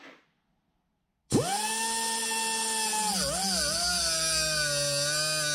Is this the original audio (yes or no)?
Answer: yes